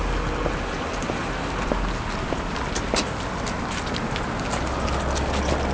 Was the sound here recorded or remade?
recorded